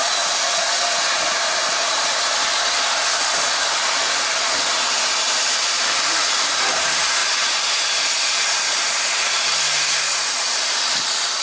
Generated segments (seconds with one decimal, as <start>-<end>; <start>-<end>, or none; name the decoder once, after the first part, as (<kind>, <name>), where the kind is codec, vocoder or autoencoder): 5.2-7.2 (vocoder, BigVGAN v2); 7.7-11.4

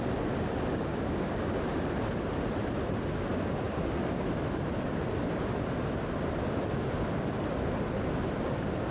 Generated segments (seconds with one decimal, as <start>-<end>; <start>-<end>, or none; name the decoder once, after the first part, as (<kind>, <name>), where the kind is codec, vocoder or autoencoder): 0.7-1.6 (codec, DAC)

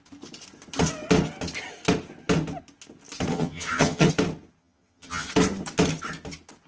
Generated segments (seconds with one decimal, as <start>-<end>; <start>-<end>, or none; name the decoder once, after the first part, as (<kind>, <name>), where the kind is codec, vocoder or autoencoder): 3.3-4.1 (vocoder, HiFi-GAN); 4.6-5.3

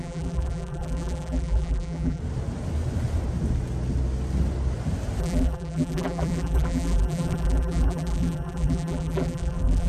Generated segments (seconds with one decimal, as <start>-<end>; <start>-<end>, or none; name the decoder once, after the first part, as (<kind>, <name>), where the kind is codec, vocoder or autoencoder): 0.0-2.2 (vocoder, BigVGAN v2); 5.2-9.9

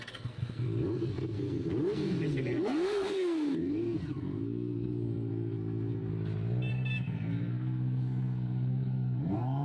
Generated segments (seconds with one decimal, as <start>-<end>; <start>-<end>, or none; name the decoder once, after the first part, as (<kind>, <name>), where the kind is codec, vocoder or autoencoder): 0.0-6.1 (codec, SNAC); 6.7-9.6

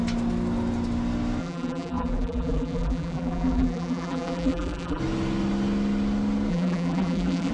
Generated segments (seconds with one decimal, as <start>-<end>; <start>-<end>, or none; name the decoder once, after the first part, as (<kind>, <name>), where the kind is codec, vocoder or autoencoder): 1.4-5.0 (vocoder, BigVGAN v2); 6.5-7.5